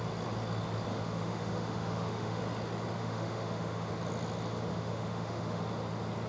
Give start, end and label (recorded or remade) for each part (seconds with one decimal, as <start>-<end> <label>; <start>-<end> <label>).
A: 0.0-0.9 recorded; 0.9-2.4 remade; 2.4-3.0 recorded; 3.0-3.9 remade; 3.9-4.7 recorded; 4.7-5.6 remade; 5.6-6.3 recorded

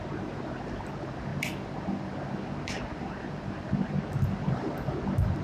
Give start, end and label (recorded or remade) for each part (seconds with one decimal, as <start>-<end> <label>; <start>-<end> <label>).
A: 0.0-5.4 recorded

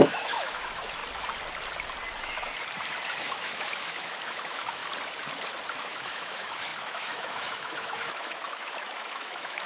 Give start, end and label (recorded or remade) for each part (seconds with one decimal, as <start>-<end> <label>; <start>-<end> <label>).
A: 0.0-1.0 remade; 1.0-3.2 recorded; 3.2-4.8 remade; 4.8-5.8 recorded; 5.8-9.7 remade

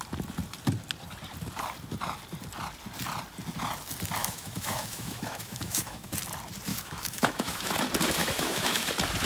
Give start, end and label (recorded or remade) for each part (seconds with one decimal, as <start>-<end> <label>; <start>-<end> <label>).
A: 0.0-4.2 recorded; 4.2-6.1 remade; 6.1-6.7 recorded; 6.7-7.7 remade; 7.7-8.2 recorded; 8.2-8.9 remade; 8.9-9.3 recorded

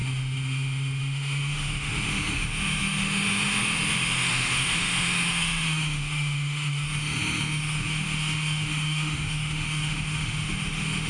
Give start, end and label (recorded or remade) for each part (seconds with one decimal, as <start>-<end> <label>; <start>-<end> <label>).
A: 0.0-11.1 remade